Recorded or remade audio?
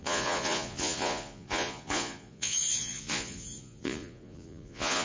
remade